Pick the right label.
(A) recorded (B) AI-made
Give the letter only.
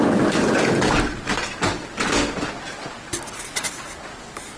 A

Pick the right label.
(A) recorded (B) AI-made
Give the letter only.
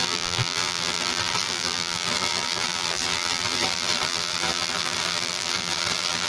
B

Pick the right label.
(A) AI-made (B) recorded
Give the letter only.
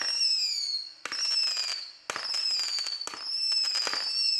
B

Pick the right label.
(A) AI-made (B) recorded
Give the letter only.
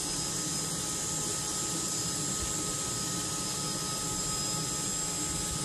B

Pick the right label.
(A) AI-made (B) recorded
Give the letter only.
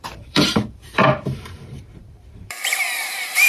A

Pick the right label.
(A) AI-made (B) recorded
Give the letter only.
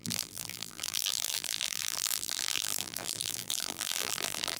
A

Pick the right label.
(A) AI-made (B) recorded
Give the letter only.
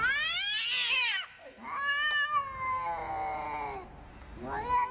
B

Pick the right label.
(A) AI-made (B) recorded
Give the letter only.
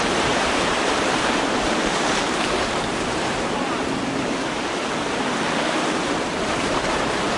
A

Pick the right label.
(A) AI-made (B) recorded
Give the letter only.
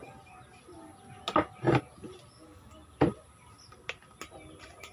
B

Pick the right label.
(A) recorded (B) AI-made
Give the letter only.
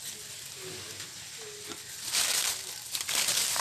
A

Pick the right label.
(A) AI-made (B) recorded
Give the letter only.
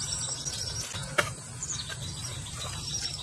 B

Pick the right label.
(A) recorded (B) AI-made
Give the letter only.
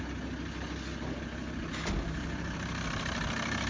A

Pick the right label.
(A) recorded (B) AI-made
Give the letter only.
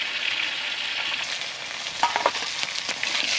A